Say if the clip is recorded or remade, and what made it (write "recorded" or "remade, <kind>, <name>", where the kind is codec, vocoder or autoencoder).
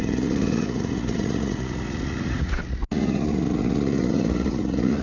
remade, vocoder, Vocos